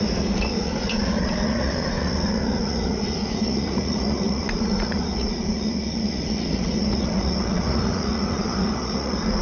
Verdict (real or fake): fake